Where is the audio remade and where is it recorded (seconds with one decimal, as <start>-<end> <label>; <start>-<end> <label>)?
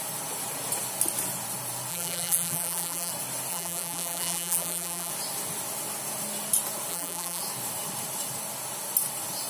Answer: 0.0-1.9 recorded; 1.9-3.1 remade; 3.1-3.5 recorded; 3.5-5.1 remade; 5.1-6.9 recorded; 6.9-7.4 remade; 7.4-9.5 recorded